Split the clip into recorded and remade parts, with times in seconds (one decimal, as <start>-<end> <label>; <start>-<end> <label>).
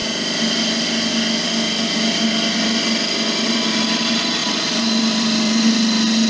0.0-4.4 recorded; 4.4-5.6 remade; 5.6-6.3 recorded